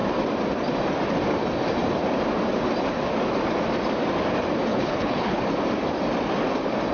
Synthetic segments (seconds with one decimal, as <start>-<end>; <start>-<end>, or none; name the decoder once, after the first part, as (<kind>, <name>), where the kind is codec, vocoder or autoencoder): 4.7-5.4 (codec, HILCodec)